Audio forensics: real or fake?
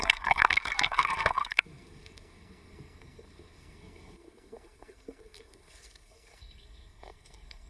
fake